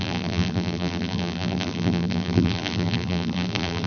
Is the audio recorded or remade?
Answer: remade